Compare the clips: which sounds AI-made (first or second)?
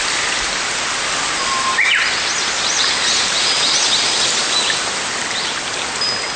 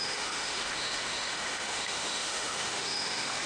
second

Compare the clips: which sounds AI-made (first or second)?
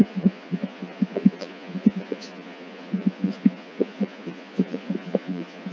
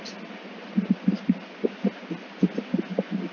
first